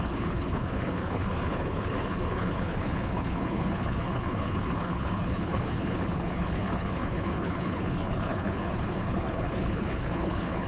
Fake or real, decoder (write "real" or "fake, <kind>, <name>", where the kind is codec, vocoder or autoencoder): fake, codec, HILCodec